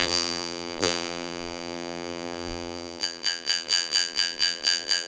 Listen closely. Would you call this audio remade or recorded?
remade